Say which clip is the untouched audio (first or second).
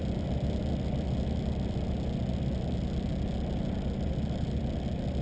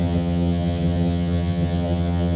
first